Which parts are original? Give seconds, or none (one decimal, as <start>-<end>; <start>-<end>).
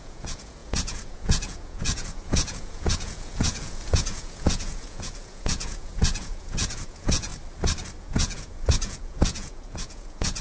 7.3-8.0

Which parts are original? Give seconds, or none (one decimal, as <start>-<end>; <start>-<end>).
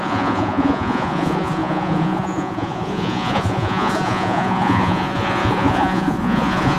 none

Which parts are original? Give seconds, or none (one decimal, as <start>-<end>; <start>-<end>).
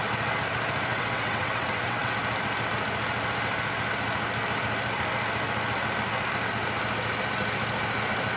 0.0-0.9; 2.1-8.4